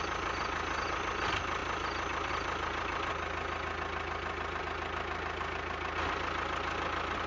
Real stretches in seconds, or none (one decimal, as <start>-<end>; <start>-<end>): 0.0-7.3